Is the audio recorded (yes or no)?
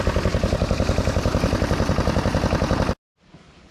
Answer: yes